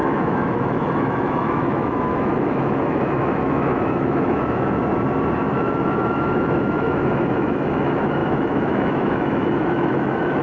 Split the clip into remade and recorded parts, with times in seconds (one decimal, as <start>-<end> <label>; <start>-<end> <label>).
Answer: 0.0-4.8 remade; 4.8-5.4 recorded; 5.4-10.4 remade